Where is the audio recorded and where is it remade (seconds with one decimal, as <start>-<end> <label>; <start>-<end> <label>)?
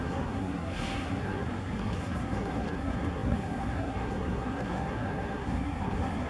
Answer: 0.0-6.3 remade